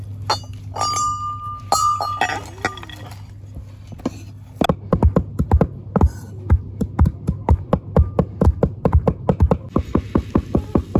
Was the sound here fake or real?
real